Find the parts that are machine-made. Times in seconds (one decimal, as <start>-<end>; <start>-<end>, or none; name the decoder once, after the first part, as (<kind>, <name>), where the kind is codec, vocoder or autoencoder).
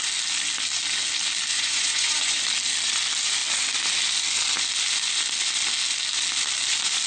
1.5-2.4 (vocoder, Vocos)